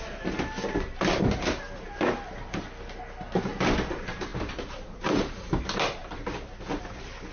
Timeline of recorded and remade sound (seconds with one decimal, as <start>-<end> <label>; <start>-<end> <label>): 0.0-4.3 recorded; 4.3-5.5 remade; 5.5-7.3 recorded